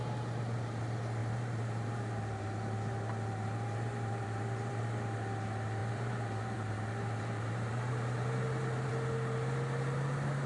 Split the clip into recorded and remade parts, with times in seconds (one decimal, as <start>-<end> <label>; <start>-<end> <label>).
0.0-1.2 recorded; 1.2-4.8 remade; 4.8-5.8 recorded; 5.8-8.9 remade; 8.9-10.5 recorded